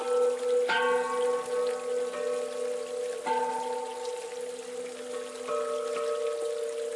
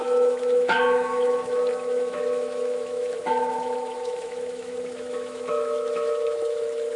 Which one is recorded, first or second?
first